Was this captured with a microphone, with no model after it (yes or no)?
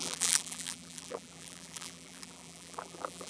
no